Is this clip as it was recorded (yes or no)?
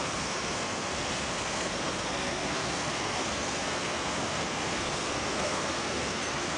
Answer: no